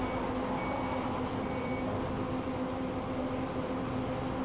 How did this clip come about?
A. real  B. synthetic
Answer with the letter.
A